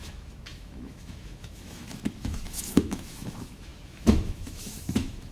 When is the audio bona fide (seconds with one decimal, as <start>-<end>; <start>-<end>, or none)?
none